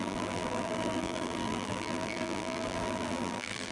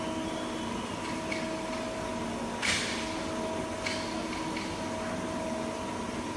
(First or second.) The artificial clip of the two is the first